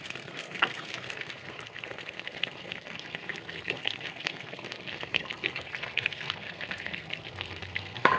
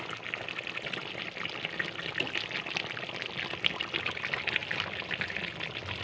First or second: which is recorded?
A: second